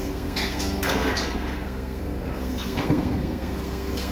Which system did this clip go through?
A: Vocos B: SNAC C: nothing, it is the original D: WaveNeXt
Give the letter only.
B